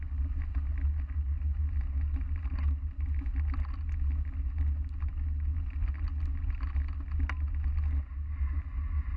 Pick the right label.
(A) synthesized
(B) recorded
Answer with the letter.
B